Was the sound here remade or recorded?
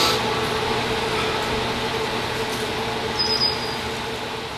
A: recorded